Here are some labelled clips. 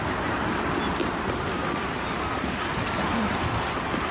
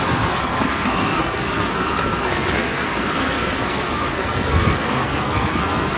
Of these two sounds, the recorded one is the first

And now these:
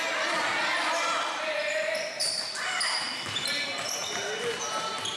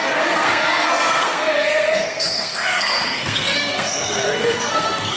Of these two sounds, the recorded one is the first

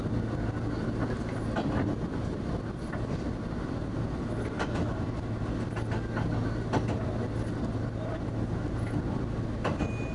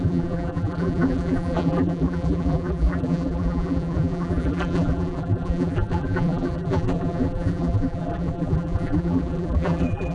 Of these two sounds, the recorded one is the first